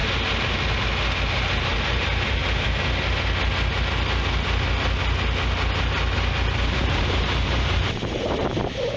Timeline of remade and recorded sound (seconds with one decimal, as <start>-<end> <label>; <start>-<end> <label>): 0.0-1.6 recorded; 1.6-2.4 remade; 2.4-6.8 recorded; 6.8-9.0 remade